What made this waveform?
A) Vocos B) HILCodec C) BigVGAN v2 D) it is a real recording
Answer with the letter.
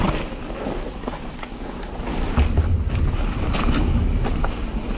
D